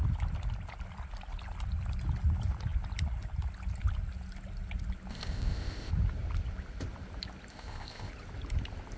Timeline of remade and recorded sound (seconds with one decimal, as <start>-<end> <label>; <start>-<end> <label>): 0.0-5.1 recorded; 5.1-5.9 remade; 5.9-7.5 recorded; 7.5-8.1 remade; 8.1-9.0 recorded